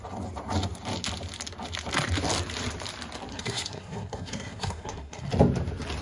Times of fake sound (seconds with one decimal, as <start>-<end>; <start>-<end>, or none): 3.3-5.3